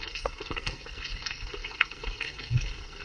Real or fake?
fake